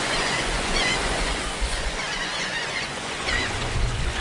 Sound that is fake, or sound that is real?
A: fake